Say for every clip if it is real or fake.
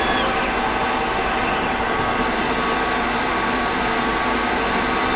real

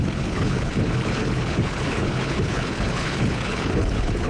fake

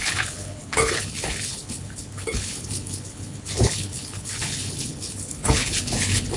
fake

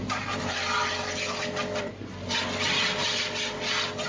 real